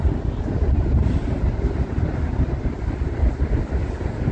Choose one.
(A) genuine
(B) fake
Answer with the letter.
A